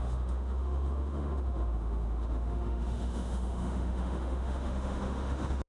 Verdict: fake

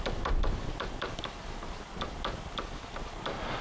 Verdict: real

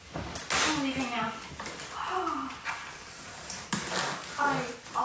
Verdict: real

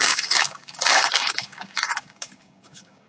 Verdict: fake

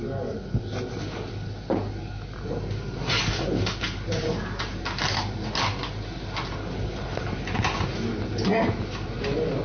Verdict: real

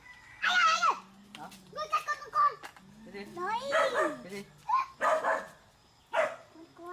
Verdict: real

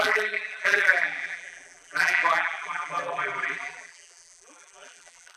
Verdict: fake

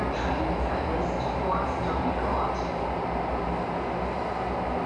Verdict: real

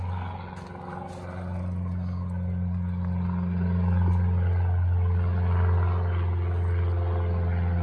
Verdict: real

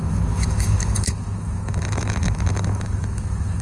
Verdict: fake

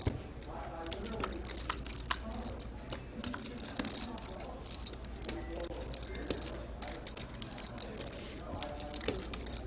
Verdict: real